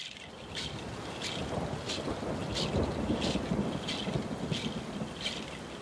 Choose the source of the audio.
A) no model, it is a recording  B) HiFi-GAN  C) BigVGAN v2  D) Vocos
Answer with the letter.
A